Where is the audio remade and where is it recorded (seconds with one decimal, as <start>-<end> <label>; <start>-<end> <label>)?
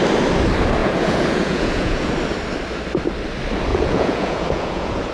0.0-0.8 recorded; 0.8-2.1 remade; 2.1-3.7 recorded; 3.7-5.1 remade